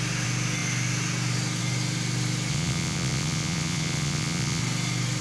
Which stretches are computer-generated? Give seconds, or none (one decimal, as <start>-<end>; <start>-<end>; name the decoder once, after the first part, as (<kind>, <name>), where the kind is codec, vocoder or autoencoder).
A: 2.5-4.6 (vocoder, Vocos)